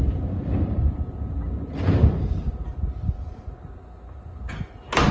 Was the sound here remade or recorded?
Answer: recorded